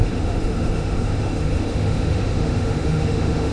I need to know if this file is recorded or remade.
remade